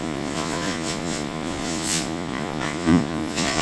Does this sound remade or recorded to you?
remade